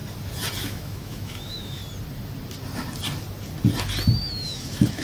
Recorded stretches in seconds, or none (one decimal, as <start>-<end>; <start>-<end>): 0.0-0.6; 1.8-4.2